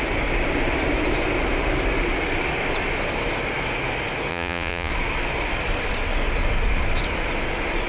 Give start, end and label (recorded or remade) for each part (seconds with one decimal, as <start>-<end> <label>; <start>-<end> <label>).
0.0-4.3 recorded; 4.3-4.9 remade; 4.9-7.9 recorded